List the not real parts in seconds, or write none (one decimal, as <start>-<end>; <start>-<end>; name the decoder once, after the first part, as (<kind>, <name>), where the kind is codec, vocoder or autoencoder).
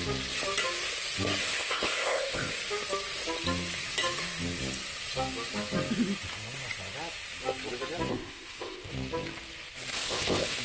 1.4-2.6 (codec, ZipCodec); 8.1-8.9; 9.9-10.6